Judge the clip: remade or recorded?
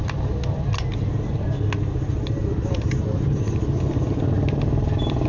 recorded